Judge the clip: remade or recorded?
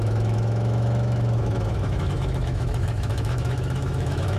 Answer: remade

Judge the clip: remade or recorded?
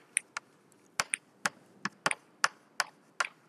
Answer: recorded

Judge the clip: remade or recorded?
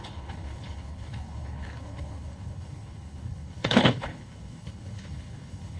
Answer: remade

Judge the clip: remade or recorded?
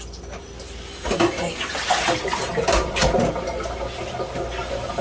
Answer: recorded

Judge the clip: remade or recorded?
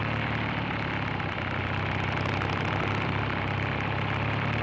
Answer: recorded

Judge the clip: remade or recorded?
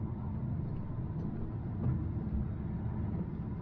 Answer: recorded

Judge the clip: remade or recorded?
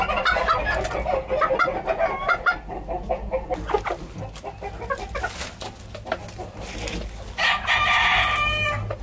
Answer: recorded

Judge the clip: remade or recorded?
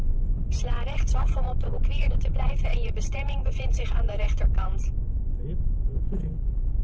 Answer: remade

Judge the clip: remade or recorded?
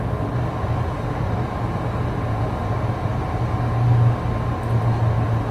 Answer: recorded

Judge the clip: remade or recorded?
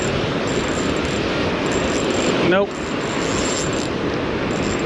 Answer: recorded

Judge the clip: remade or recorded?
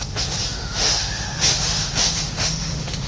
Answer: remade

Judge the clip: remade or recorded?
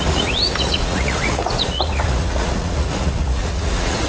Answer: remade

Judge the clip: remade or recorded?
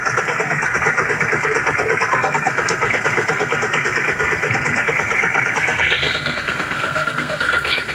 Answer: remade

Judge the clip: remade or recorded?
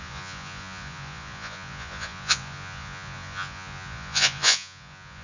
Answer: remade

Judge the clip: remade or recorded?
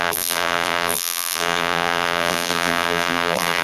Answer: remade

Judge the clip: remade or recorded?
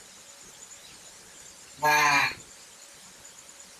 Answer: recorded